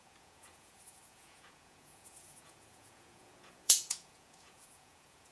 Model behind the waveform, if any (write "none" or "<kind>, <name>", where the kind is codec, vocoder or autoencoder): vocoder, Vocos